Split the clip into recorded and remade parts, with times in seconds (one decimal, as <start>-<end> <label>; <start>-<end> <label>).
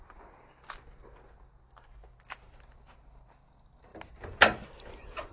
0.0-5.3 recorded